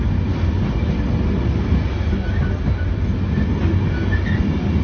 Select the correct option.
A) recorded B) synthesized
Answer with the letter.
A